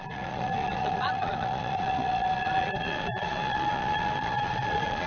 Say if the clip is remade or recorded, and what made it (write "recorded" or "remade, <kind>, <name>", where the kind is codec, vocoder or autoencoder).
remade, vocoder, Vocos